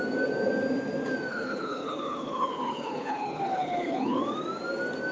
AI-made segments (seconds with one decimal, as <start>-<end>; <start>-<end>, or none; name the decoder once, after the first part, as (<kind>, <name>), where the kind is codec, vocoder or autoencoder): 1.3-4.2 (codec, HILCodec)